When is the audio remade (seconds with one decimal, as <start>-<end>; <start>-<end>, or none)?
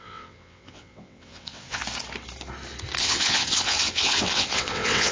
0.0-1.8; 3.0-5.1